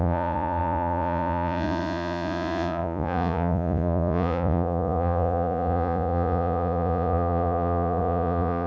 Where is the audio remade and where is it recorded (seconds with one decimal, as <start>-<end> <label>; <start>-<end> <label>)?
0.0-8.7 remade